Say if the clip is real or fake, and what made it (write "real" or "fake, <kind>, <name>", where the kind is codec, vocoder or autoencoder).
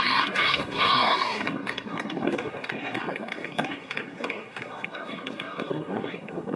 fake, codec, SNAC